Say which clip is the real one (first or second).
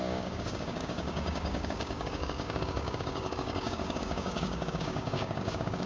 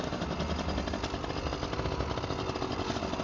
second